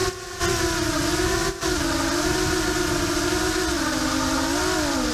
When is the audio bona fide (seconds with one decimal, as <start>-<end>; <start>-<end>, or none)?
0.0-5.1